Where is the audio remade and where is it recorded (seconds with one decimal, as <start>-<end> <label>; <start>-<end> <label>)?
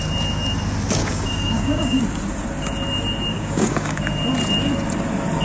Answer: 0.0-1.0 recorded; 1.0-2.0 remade; 2.0-3.3 recorded; 3.3-4.0 remade; 4.0-5.4 recorded